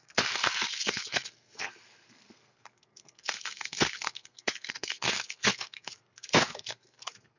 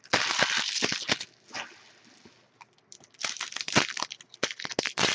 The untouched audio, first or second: second